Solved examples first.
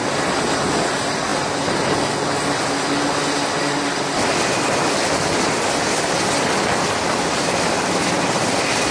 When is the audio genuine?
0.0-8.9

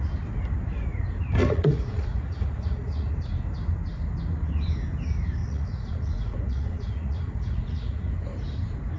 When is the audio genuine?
0.0-1.4; 3.1-5.4; 8.1-9.0